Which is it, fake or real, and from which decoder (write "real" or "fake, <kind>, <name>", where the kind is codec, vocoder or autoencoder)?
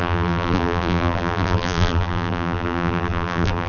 fake, vocoder, BigVGAN v2